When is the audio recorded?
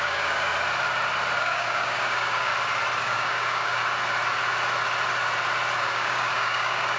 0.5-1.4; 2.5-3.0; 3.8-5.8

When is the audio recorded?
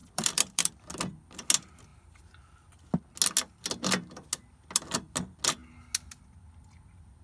0.7-7.2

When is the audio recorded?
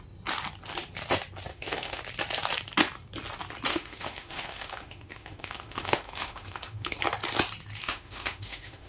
0.0-1.5; 2.0-3.7; 7.0-7.8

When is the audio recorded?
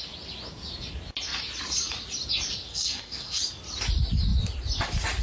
0.0-2.7; 3.4-5.2